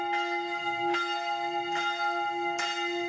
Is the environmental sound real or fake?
real